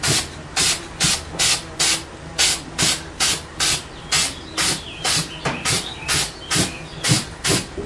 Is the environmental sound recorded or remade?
recorded